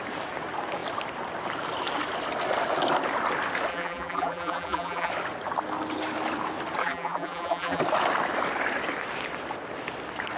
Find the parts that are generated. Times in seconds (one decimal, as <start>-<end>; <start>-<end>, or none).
3.7-5.1; 6.8-7.8